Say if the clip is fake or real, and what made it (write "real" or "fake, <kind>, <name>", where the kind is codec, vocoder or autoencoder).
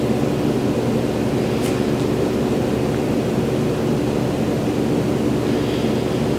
real